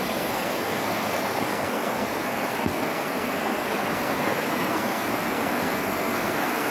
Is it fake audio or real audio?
fake